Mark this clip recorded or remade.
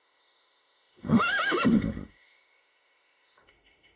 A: remade